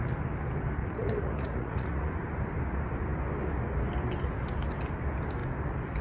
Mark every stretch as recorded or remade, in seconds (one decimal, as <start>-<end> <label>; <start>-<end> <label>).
0.0-0.8 recorded; 0.8-2.1 remade; 2.1-6.0 recorded